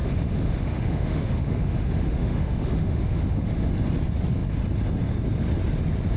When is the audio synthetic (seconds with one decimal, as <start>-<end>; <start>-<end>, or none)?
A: 0.0-3.7